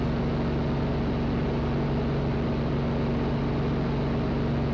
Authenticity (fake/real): real